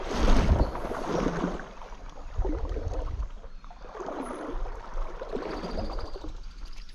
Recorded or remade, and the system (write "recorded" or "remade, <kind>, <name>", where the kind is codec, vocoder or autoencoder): recorded